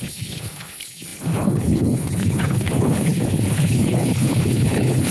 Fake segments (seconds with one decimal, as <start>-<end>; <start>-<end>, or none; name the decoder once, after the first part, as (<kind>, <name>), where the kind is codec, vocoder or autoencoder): 0.0-5.1 (codec, HILCodec)